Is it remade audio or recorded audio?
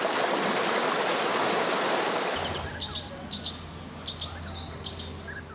recorded